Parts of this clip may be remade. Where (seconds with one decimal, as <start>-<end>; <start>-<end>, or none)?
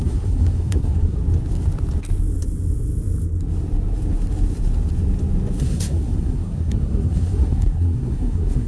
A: 0.0-1.2; 5.6-8.7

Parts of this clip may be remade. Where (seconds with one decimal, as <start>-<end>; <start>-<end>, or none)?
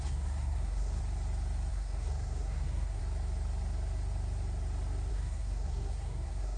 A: 0.0-1.0; 1.7-3.0; 5.1-6.6